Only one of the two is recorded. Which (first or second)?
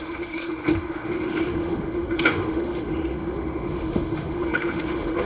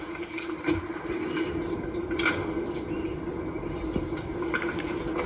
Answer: second